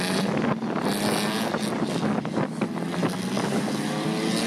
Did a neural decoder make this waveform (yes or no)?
no